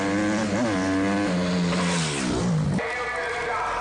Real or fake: real